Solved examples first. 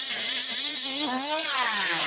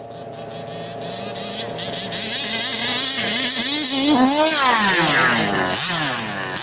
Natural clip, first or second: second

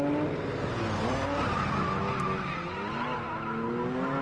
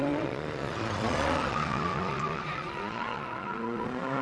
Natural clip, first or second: first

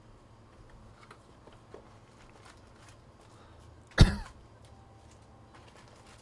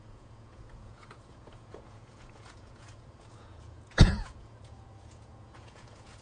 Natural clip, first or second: first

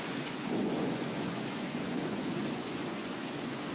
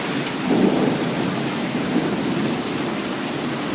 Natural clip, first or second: second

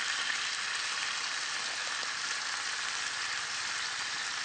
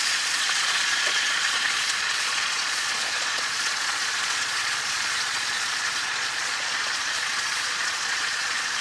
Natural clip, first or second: first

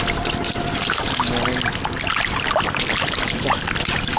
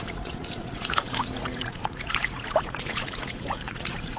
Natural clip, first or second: first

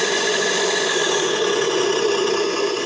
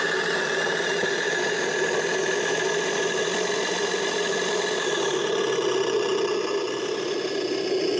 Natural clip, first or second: second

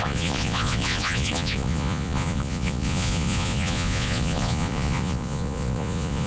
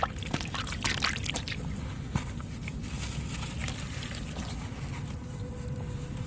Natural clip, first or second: second